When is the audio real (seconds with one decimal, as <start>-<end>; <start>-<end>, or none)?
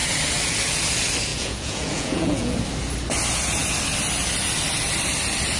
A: 0.0-1.3; 2.5-5.6